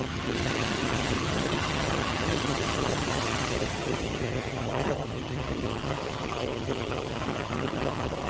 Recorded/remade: remade